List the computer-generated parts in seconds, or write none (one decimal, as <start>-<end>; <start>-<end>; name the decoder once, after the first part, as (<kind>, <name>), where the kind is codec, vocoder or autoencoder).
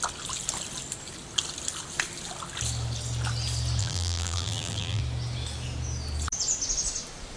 3.8-5.0 (vocoder, BigVGAN v2)